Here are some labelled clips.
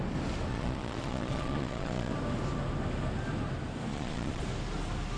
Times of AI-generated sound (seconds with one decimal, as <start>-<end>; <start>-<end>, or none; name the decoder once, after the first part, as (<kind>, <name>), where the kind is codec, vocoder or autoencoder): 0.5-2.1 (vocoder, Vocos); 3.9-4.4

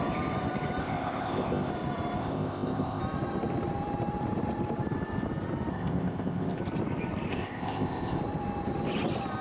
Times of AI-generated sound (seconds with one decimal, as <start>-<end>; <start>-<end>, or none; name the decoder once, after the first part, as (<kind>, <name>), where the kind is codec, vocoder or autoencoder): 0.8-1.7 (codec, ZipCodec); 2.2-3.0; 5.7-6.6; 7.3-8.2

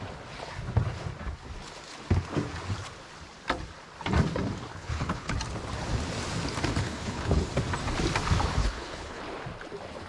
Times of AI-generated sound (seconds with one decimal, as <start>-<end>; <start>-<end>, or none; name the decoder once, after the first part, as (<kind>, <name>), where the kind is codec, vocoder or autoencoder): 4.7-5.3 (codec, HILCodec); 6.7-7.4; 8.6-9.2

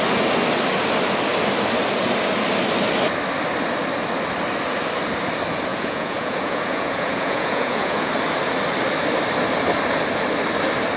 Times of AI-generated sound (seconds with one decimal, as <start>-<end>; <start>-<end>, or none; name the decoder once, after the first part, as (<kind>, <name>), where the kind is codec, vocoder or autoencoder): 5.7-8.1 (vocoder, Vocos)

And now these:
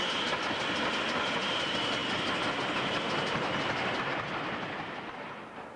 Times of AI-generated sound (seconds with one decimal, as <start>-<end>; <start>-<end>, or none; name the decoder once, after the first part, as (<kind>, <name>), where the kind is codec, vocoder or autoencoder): none

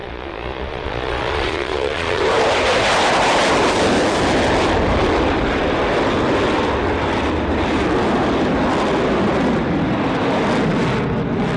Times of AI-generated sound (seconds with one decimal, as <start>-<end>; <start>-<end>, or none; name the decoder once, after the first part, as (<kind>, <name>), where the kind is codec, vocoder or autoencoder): 0.0-2.2 (vocoder, Vocos)